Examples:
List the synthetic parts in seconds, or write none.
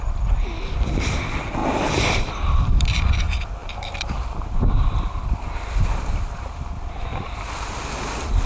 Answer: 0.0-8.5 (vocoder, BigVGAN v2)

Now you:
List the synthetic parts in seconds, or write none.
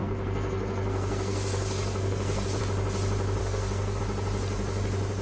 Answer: 0.0-2.6 (codec, SNAC); 3.4-4.0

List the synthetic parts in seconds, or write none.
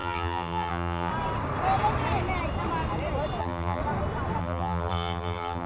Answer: 0.0-1.1 (vocoder, BigVGAN v2); 3.4-3.8; 4.4-5.7